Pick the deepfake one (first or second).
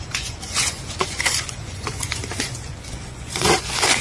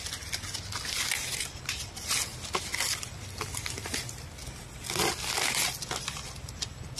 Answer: first